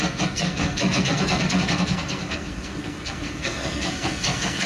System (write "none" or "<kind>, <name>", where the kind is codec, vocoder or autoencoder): codec, SNAC